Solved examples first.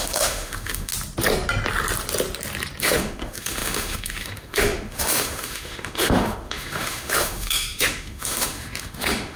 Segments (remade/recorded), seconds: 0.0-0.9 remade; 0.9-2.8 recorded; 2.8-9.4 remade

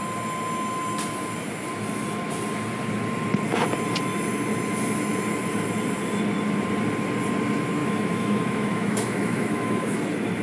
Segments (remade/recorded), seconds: 0.0-7.8 recorded; 7.8-10.0 remade; 10.0-10.4 recorded

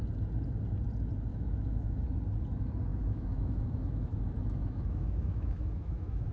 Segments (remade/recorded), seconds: 0.0-1.3 recorded; 1.3-2.0 remade; 2.0-2.9 recorded; 2.9-6.3 remade